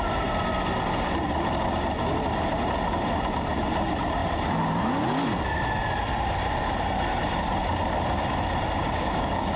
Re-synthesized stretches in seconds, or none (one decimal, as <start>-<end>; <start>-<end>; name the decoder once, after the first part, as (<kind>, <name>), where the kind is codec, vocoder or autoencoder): 8.8-9.6 (codec, DAC)